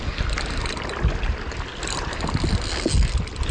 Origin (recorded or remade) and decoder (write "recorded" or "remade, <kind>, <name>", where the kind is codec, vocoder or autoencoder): recorded